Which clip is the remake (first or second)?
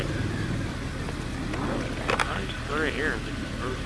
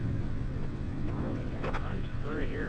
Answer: second